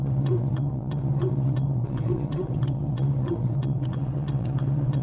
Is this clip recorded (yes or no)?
no